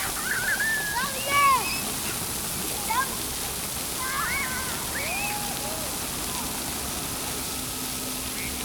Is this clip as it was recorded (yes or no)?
yes